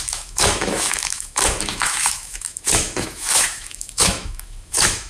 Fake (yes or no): yes